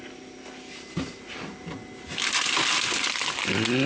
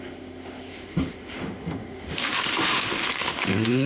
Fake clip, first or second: second